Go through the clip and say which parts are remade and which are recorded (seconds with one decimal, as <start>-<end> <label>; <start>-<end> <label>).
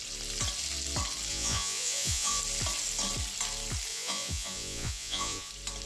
0.0-1.3 recorded; 1.3-2.4 remade; 2.4-3.9 recorded; 3.9-5.5 remade; 5.5-5.9 recorded